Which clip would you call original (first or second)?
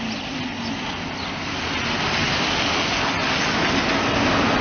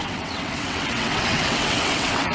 first